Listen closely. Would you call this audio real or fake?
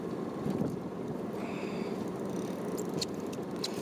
real